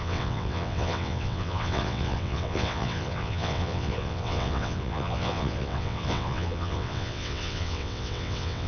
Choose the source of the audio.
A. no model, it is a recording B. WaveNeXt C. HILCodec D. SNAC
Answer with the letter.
B